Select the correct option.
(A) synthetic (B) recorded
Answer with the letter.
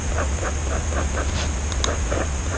B